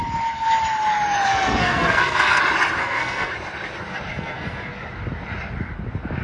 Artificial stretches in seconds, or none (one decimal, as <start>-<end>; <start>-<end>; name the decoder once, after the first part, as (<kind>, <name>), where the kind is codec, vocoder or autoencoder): 1.3-2.4 (codec, SNAC); 2.8-3.3; 4.1-4.7